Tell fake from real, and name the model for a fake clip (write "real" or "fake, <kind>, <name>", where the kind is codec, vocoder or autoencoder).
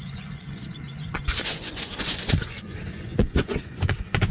fake, vocoder, Vocos